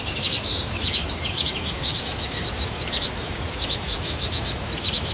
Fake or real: fake